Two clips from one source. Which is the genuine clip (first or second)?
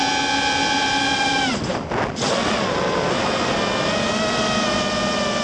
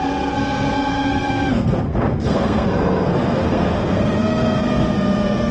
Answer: first